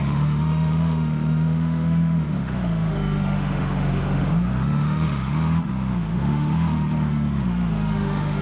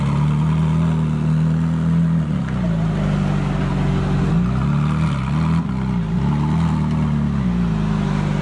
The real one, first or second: second